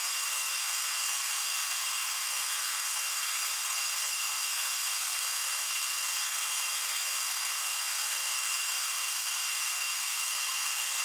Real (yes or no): no